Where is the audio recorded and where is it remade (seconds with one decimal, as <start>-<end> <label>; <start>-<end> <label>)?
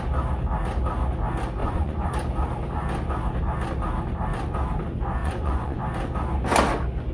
0.0-1.6 recorded; 1.6-2.1 remade; 2.1-5.2 recorded; 5.2-5.8 remade; 5.8-7.1 recorded